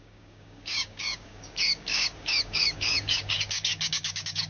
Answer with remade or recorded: remade